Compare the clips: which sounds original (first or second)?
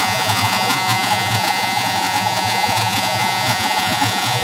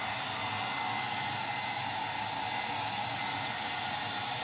second